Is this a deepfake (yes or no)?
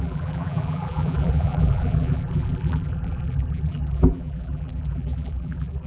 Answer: yes